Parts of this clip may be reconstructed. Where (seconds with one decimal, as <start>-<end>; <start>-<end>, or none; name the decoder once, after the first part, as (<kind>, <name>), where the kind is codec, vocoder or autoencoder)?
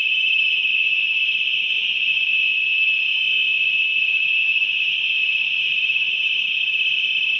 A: 0.0-0.7 (vocoder, BigVGAN v2); 2.1-7.4